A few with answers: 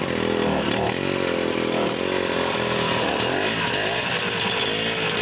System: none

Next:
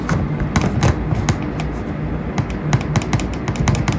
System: none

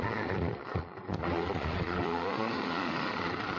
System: vocoder, Vocos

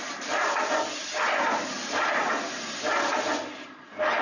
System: none